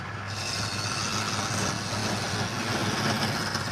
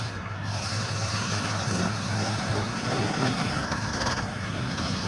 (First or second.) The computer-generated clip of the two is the second